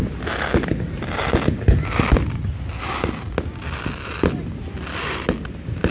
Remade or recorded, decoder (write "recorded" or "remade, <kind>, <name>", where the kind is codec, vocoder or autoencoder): recorded